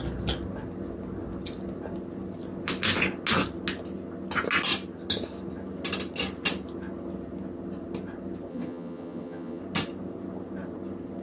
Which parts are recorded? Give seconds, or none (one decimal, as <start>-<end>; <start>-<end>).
0.0-8.5; 9.6-11.2